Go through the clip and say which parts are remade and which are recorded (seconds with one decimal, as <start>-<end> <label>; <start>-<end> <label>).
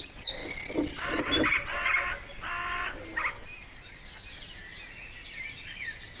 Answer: 0.0-0.4 recorded; 0.4-1.2 remade; 1.2-6.2 recorded